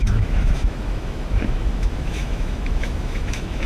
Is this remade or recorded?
remade